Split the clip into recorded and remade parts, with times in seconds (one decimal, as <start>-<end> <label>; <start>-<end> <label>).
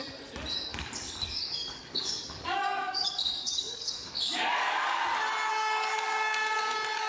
0.0-0.7 recorded; 0.7-5.0 remade; 5.0-5.5 recorded; 5.5-7.1 remade